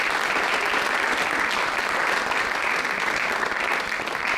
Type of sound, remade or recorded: recorded